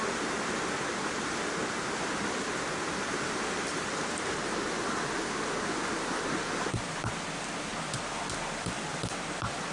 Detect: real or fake real